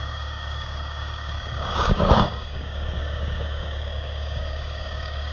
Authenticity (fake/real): fake